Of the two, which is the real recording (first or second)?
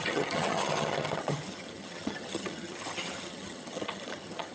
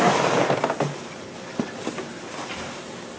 second